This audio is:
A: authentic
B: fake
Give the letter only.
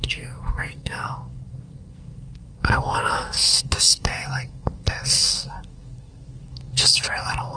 B